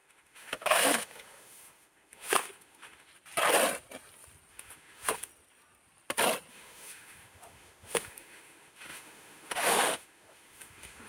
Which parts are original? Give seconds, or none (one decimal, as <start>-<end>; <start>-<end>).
3.1-4.5; 5.3-6.5